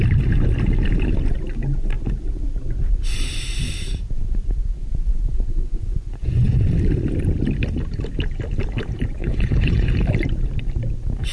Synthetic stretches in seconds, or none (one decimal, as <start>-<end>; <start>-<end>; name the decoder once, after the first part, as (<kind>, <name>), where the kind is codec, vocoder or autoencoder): 4.8-6.6 (vocoder, Vocos); 9.2-10.0